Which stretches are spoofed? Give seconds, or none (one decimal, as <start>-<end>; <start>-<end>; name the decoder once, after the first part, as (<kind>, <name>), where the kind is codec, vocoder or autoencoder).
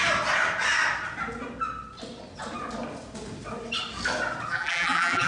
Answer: 4.5-5.3 (vocoder, BigVGAN v2)